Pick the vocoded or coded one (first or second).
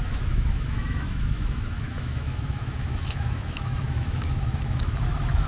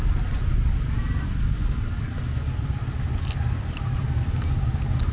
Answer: first